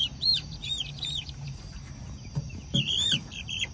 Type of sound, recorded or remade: remade